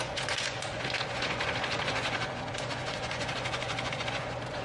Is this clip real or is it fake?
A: fake